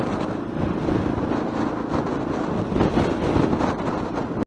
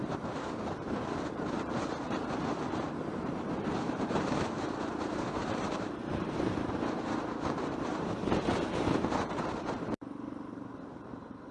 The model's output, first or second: second